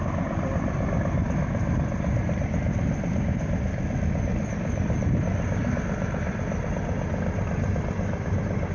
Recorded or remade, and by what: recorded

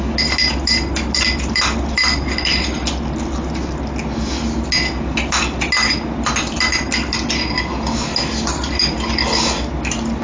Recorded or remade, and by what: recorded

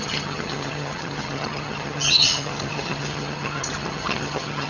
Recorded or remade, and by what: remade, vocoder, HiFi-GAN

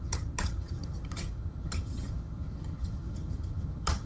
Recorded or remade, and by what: remade, vocoder, HiFi-GAN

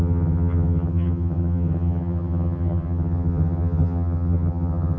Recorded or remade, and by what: remade, vocoder, HiFi-GAN